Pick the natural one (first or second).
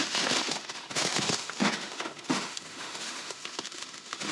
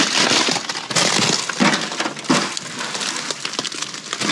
second